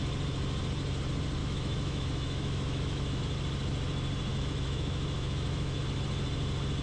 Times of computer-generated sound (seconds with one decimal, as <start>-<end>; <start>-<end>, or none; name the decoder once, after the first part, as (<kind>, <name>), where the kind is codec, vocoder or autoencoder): 1.4-3.2 (autoencoder, DAC-VAE); 4.3-5.8